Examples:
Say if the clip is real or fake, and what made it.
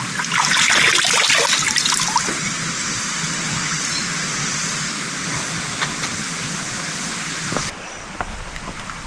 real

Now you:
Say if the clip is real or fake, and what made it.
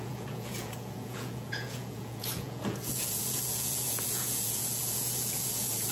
fake, vocoder, Vocos